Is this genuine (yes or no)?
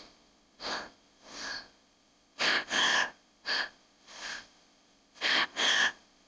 no